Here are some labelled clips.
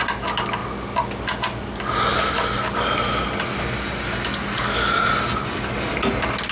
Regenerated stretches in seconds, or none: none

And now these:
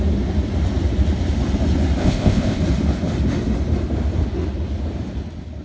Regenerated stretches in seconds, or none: 2.0-2.6 (codec, ZipCodec)

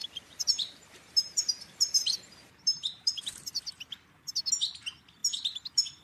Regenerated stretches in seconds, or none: 0.0-3.6 (vocoder, BigVGAN v2)

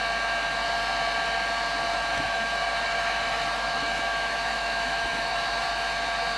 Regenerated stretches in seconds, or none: 1.9-5.7 (autoencoder, DAC-VAE)

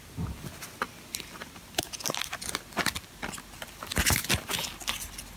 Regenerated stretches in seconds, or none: 1.4-2.3 (vocoder, BigVGAN v2)

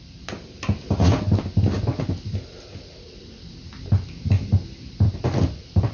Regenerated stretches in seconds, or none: none

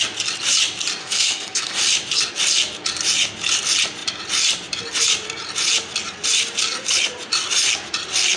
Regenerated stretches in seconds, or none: 1.0-1.8 (codec, SNAC)